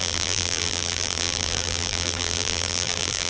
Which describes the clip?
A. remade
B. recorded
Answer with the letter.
A